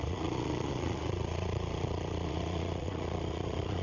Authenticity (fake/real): fake